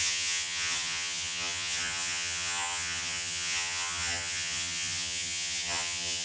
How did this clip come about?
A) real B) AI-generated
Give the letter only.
B